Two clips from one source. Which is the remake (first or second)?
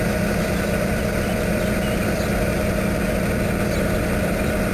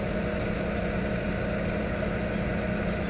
first